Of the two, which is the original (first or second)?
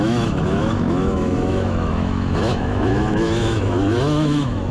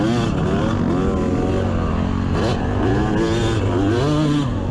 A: second